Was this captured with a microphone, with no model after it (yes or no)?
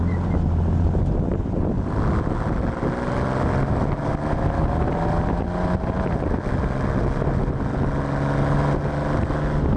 yes